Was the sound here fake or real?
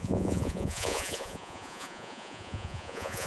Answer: fake